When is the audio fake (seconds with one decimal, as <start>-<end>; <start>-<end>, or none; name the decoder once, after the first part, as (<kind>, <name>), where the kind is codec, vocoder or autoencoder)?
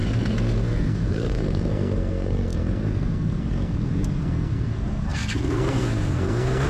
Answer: 0.0-6.7 (codec, SNAC)